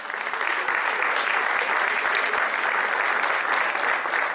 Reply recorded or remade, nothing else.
recorded